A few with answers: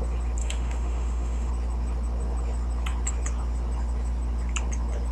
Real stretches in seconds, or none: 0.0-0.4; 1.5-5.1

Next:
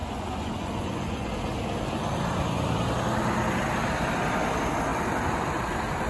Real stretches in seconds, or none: 1.3-6.1

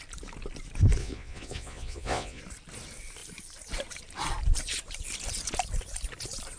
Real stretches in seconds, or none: 0.0-1.0; 2.4-6.6

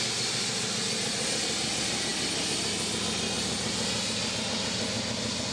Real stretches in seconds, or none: 0.0-5.5